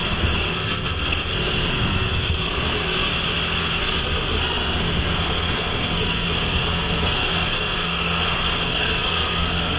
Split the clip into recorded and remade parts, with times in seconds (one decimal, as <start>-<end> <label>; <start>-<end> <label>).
0.0-3.1 remade; 3.1-3.8 recorded; 3.8-9.8 remade